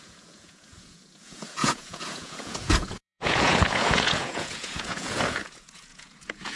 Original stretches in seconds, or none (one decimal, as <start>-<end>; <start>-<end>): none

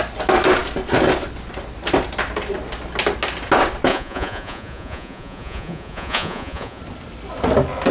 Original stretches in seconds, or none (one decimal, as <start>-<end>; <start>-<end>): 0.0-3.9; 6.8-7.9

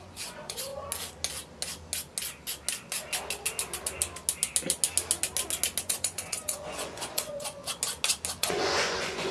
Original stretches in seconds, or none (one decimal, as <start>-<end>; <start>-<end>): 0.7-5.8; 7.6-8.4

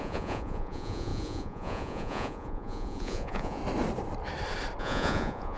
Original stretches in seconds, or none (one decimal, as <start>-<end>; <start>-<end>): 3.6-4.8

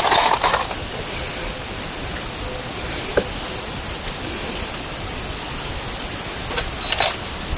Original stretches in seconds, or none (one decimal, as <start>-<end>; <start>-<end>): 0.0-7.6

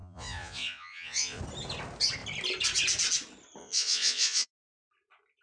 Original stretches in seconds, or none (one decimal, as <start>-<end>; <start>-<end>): 1.4-3.6; 4.5-5.4